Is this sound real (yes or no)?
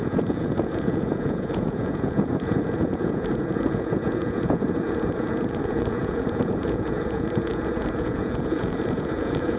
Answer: no